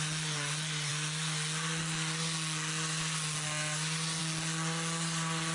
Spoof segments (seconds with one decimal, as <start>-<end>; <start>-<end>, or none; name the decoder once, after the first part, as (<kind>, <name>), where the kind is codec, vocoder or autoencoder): none